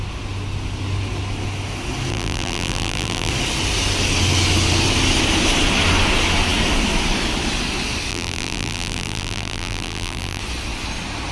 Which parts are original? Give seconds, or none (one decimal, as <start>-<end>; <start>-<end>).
0.0-2.1; 3.3-8.1; 10.4-11.3